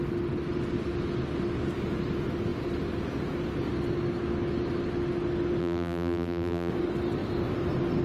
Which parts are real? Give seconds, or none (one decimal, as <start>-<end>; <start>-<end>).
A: 0.0-5.6; 6.7-8.0